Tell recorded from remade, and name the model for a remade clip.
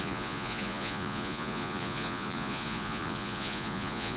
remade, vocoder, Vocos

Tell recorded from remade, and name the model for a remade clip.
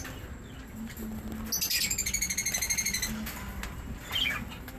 recorded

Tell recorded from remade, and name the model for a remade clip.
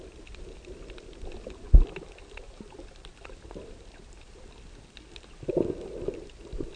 recorded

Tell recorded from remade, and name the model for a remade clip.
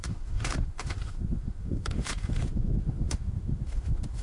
remade, autoencoder, DAC-VAE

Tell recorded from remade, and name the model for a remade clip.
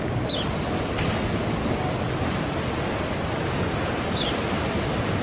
recorded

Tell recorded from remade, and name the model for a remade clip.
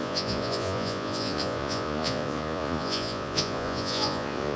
remade, vocoder, Vocos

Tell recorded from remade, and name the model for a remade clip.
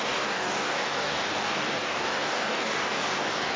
remade, codec, DAC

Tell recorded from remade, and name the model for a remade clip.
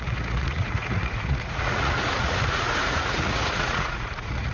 remade, vocoder, Vocos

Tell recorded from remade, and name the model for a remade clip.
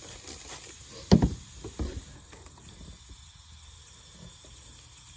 recorded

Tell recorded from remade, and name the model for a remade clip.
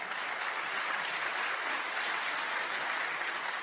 recorded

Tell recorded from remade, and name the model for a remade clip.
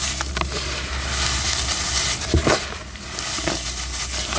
recorded